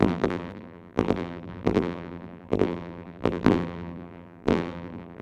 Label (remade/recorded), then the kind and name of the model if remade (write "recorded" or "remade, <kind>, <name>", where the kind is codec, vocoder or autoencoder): remade, vocoder, BigVGAN v2